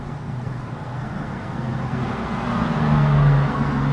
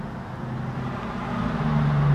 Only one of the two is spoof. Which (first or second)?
first